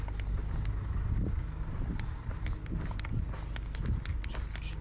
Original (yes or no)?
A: yes